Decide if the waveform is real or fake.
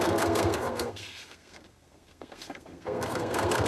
fake